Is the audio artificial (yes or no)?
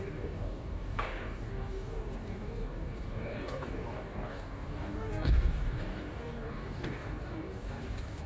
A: yes